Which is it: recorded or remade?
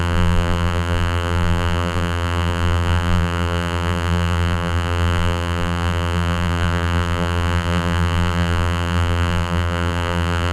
remade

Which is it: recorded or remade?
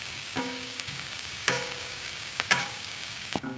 remade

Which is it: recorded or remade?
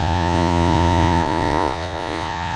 remade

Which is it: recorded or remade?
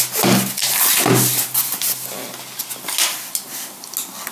recorded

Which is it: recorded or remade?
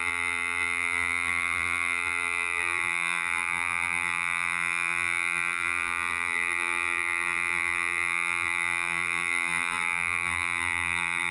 remade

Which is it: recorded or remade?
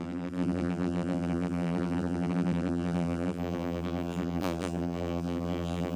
remade